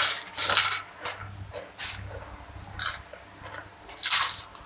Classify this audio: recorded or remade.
recorded